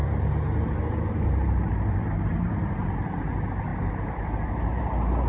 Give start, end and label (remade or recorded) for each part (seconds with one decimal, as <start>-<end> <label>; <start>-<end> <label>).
0.0-3.2 remade; 3.2-3.7 recorded; 3.7-4.8 remade; 4.8-5.3 recorded